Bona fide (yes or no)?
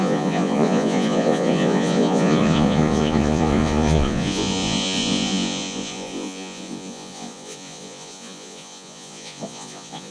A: no